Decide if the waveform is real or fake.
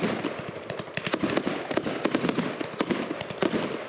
real